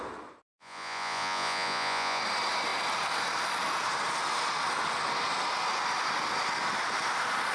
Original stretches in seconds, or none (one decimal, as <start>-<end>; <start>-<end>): 0.0-0.5; 2.2-7.5